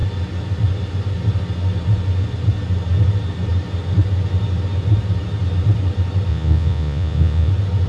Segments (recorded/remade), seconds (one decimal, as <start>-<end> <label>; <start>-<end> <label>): 0.0-6.3 recorded; 6.3-7.5 remade; 7.5-7.9 recorded